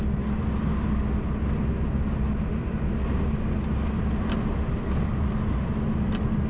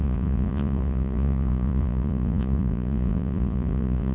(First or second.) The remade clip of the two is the second